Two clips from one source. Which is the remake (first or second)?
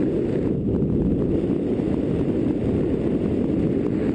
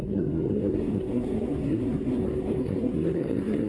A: second